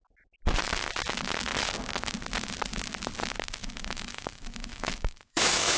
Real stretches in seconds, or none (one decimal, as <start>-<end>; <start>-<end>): 0.0-3.6